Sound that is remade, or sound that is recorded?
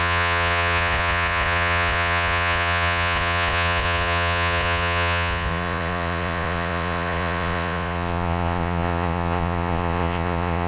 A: remade